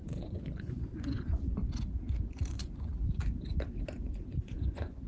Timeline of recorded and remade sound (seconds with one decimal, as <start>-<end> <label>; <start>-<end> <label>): 0.0-1.6 remade; 1.6-2.5 recorded; 2.5-2.9 remade; 2.9-3.7 recorded; 3.7-5.1 remade